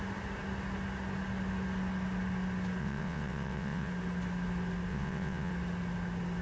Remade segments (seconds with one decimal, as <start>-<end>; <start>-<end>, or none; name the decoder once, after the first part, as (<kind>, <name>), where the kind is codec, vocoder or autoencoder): 2.8-3.9 (vocoder, WaveNeXt); 4.9-5.5

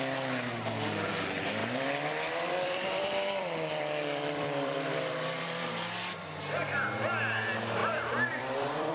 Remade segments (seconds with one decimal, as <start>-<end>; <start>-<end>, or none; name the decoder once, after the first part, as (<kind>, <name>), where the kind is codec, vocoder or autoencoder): 1.6-5.7 (vocoder, BigVGAN v2); 7.8-8.9

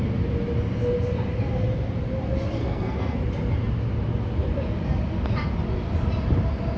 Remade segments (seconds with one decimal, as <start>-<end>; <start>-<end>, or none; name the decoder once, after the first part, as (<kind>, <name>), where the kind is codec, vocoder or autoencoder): 2.6-3.2 (codec, SNAC)